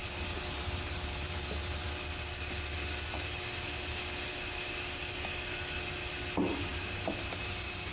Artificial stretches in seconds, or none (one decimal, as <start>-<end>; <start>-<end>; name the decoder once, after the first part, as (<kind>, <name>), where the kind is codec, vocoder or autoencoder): none